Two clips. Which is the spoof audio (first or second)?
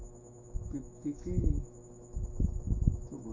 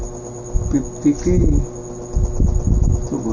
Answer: first